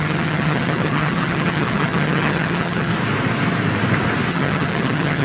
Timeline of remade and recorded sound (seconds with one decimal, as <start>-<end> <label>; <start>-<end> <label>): 0.0-2.9 remade; 2.9-4.3 recorded; 4.3-5.2 remade